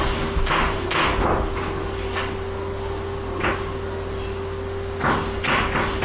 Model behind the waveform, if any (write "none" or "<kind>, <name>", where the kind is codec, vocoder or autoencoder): none